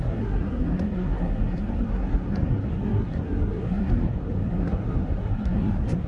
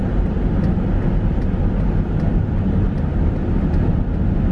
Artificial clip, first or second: first